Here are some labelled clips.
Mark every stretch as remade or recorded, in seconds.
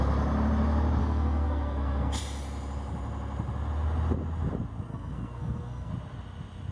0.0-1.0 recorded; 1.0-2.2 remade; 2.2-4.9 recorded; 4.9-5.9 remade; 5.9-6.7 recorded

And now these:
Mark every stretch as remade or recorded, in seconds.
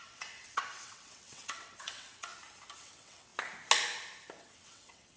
0.0-2.3 remade; 2.3-2.8 recorded; 2.8-3.3 remade; 3.3-4.4 recorded; 4.4-5.2 remade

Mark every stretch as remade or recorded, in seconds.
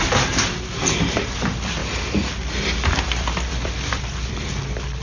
0.0-1.8 recorded; 1.8-4.5 remade; 4.5-5.0 recorded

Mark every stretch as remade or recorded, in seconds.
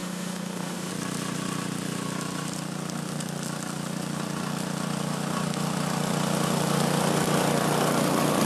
0.0-0.9 remade; 0.9-8.5 recorded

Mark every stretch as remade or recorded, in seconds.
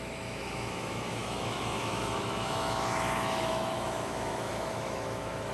0.0-5.5 remade